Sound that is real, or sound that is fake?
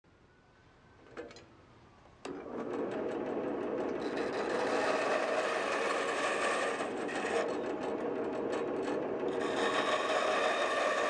real